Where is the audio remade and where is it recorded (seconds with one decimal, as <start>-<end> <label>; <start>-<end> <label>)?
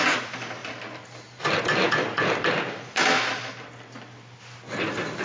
0.0-5.2 recorded